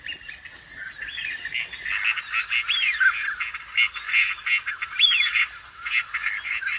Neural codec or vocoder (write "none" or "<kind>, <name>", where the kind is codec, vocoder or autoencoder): none